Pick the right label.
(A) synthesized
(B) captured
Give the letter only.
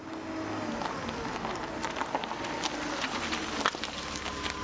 B